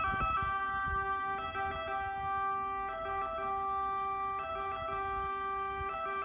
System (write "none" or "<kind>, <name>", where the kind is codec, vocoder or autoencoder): none